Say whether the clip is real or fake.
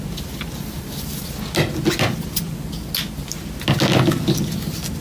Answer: real